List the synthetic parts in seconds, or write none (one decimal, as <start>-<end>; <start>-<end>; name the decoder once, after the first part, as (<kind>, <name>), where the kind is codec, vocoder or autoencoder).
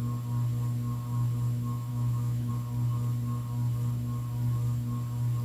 1.9-2.5 (autoencoder, DAC-VAE)